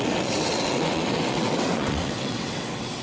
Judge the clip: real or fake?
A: fake